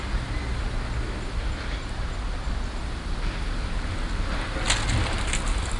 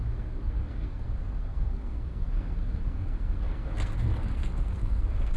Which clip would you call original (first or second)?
first